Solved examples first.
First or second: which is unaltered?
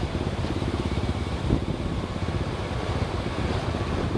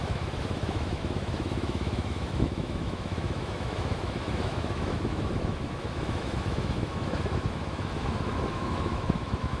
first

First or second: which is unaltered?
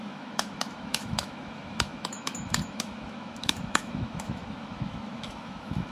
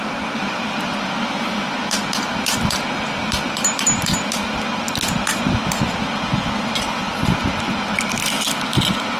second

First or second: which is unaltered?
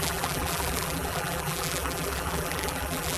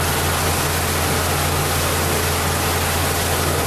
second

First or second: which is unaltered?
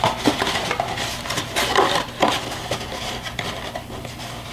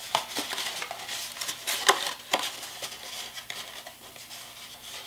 second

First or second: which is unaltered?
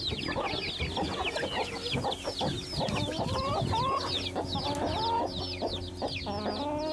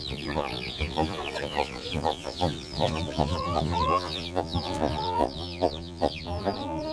first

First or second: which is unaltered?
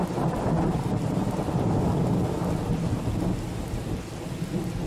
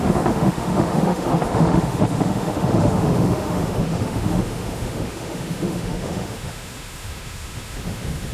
first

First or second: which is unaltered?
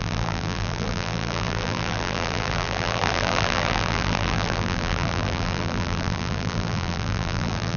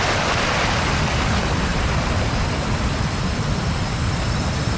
second